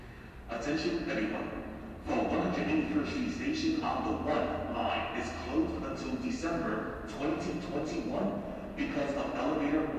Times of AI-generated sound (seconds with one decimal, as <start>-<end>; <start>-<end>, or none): 7.3-8.3